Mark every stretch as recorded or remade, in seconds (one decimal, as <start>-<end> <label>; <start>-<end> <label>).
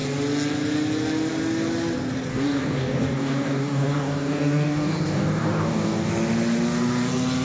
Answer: 0.0-2.3 recorded; 2.3-6.1 remade; 6.1-7.4 recorded